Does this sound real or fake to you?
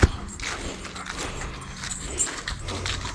real